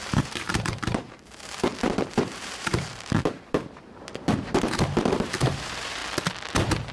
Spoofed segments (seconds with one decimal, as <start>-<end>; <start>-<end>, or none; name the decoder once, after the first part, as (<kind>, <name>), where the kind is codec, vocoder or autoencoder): 0.0-6.0 (vocoder, BigVGAN v2)